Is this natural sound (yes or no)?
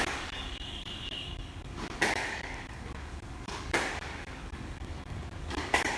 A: no